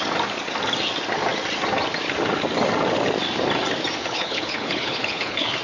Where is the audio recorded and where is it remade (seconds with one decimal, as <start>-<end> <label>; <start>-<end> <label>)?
0.0-4.0 recorded; 4.0-5.6 remade

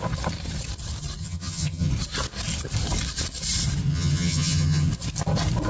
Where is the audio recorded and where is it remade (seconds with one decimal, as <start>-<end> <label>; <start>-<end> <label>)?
0.0-1.2 recorded; 1.2-1.9 remade; 1.9-3.9 recorded; 3.9-4.9 remade; 4.9-5.7 recorded

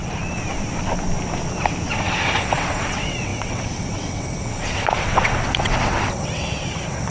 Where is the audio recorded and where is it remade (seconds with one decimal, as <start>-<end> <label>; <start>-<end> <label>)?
0.0-1.9 recorded; 1.9-7.1 remade

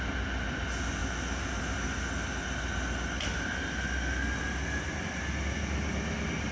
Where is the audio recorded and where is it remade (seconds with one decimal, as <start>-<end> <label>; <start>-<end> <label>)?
0.0-6.5 recorded

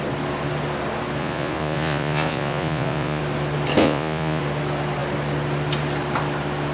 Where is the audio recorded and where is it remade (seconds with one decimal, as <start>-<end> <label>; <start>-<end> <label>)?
0.0-1.2 recorded; 1.2-3.2 remade; 3.2-3.8 recorded; 3.8-4.4 remade; 4.4-6.7 recorded